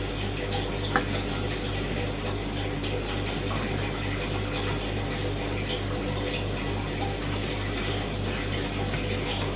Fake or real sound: real